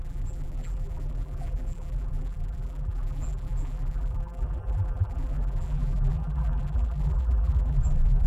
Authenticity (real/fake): fake